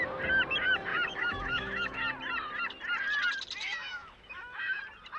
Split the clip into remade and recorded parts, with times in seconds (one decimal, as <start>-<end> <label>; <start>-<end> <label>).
0.0-0.9 recorded; 0.9-2.0 remade; 2.0-3.6 recorded; 3.6-4.8 remade; 4.8-5.2 recorded